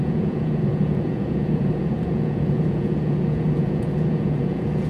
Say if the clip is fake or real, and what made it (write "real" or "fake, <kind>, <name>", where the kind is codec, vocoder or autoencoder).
fake, vocoder, Vocos